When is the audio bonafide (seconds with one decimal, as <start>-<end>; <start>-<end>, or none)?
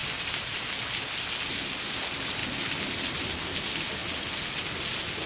0.7-5.3